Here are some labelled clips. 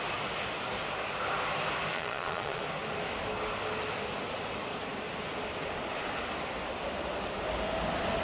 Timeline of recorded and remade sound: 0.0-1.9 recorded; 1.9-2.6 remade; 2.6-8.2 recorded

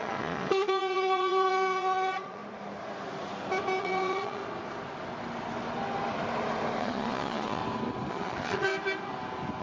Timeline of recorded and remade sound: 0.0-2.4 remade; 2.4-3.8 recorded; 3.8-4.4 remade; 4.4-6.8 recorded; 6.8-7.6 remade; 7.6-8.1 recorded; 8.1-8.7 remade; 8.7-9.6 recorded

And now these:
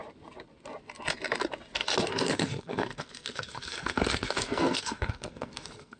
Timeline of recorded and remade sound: 0.0-2.1 recorded; 2.1-6.0 remade

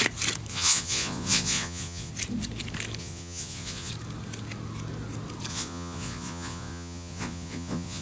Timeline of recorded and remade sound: 0.0-0.5 recorded; 0.5-2.1 remade; 2.1-3.0 recorded; 3.0-3.9 remade; 3.9-5.5 recorded; 5.5-8.0 remade

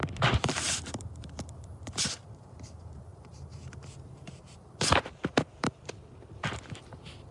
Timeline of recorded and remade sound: 0.0-7.3 remade

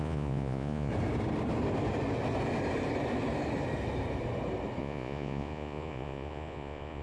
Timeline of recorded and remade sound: 0.0-0.9 remade; 0.9-4.8 recorded; 4.8-7.0 remade

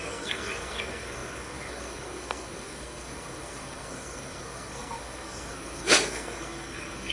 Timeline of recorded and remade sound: 0.0-7.1 remade